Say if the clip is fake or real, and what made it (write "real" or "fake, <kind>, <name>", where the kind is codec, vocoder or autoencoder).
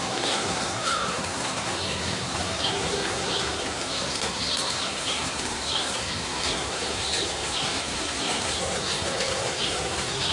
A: fake, codec, SNAC